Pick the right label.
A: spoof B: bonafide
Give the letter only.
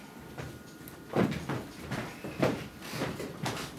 A